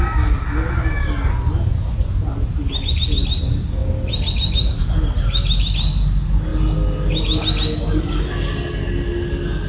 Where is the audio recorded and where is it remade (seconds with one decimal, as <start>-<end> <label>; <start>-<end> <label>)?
0.0-9.7 recorded